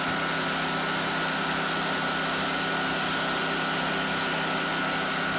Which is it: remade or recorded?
recorded